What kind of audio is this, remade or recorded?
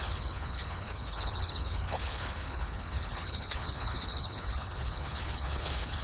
remade